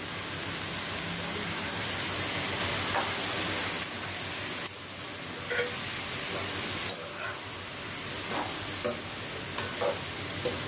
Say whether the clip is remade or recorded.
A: recorded